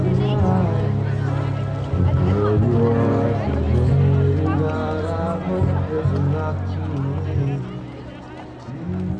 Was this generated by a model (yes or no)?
no